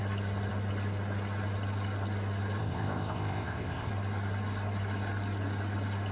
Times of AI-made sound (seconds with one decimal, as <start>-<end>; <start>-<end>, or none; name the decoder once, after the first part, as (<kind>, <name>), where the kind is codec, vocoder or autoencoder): 2.6-3.9 (codec, ZipCodec)